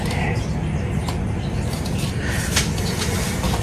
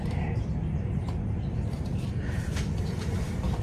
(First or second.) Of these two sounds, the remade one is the second